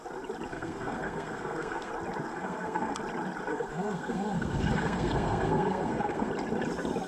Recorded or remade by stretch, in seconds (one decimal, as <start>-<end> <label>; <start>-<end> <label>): 0.0-0.5 recorded; 0.5-1.9 remade; 1.9-2.3 recorded; 2.3-3.0 remade; 3.0-3.5 recorded; 3.5-6.3 remade; 6.3-7.1 recorded